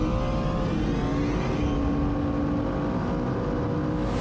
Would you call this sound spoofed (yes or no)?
no